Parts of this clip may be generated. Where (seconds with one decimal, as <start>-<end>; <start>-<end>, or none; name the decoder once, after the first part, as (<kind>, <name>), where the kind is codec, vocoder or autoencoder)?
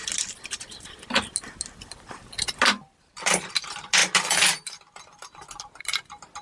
none